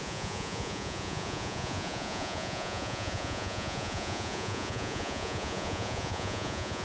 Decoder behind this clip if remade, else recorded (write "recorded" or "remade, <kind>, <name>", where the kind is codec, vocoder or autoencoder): remade, vocoder, Vocos